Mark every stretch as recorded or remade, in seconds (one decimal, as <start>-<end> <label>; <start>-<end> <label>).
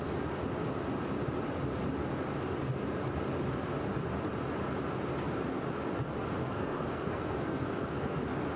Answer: 0.0-6.4 recorded; 6.4-8.2 remade; 8.2-8.6 recorded